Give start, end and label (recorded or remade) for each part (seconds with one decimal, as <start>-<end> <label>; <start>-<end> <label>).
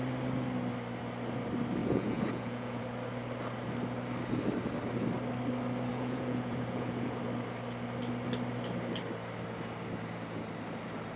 0.0-1.8 recorded; 1.8-2.8 remade; 2.8-5.9 recorded; 5.9-7.2 remade; 7.2-11.2 recorded